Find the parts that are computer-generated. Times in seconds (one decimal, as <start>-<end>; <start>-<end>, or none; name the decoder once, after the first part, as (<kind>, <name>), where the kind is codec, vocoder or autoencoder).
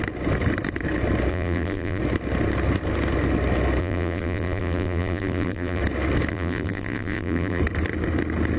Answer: 1.3-2.0 (vocoder, BigVGAN v2); 3.8-5.8; 6.3-7.6